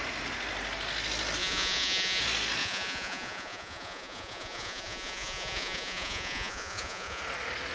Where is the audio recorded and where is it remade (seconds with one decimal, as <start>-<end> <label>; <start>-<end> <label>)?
0.0-1.4 recorded; 1.4-2.2 remade; 2.2-2.6 recorded; 2.6-7.2 remade; 7.2-7.7 recorded